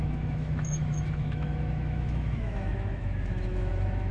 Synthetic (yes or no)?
yes